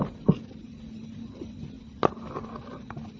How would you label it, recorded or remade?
recorded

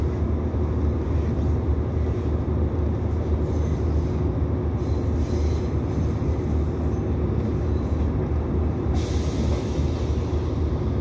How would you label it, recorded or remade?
recorded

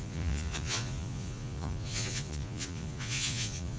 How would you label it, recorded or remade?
remade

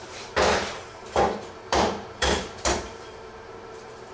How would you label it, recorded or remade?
remade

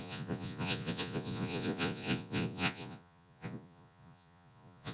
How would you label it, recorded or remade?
remade